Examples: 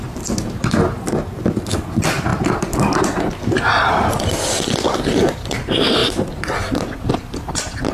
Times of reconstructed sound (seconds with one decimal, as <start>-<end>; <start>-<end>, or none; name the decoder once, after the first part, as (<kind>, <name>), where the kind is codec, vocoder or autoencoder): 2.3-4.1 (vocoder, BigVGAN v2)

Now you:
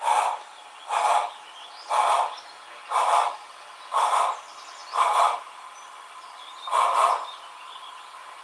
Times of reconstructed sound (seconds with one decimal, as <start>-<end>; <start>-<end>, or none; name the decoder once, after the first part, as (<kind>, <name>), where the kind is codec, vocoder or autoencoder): none

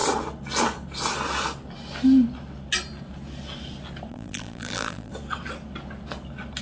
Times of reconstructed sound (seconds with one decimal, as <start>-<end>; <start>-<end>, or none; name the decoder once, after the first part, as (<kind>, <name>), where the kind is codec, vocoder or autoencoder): 4.1-5.1 (vocoder, BigVGAN v2)

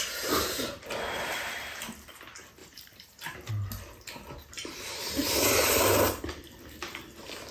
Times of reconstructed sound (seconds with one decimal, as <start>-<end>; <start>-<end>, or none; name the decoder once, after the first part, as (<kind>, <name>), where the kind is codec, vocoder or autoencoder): 2.6-3.5 (vocoder, BigVGAN v2); 4.6-6.3